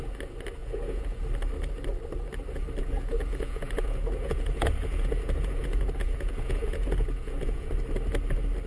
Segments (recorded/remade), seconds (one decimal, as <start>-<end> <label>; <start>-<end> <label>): 0.0-0.6 recorded; 0.6-1.2 remade; 1.2-2.8 recorded; 2.8-7.7 remade; 7.7-8.7 recorded